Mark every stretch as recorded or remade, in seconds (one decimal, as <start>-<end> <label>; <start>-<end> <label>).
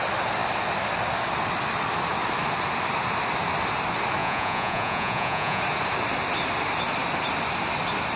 0.0-4.2 recorded; 4.2-5.6 remade; 5.6-8.2 recorded